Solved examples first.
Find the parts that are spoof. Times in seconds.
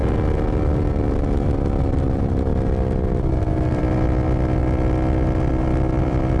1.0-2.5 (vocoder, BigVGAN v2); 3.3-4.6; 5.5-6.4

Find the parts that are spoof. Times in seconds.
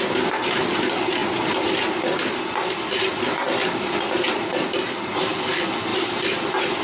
none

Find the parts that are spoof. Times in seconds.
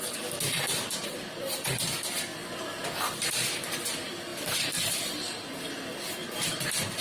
2.3-2.8 (vocoder, BigVGAN v2); 4.3-4.9